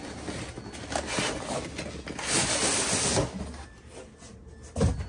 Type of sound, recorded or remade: recorded